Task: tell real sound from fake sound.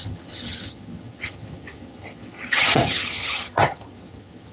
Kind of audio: fake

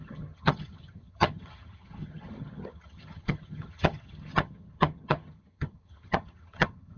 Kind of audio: fake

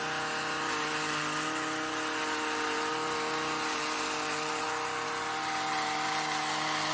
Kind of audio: real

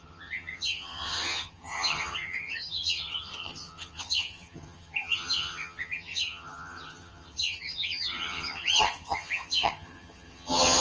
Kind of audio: fake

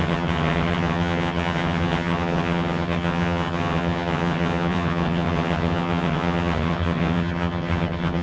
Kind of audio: fake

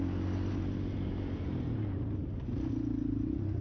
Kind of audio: real